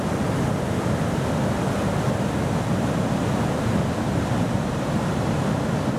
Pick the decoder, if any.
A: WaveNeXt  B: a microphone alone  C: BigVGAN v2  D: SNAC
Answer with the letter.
B